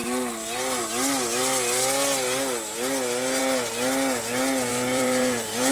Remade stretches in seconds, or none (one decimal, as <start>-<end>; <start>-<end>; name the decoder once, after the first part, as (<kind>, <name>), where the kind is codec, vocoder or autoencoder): 4.7-5.7 (vocoder, BigVGAN v2)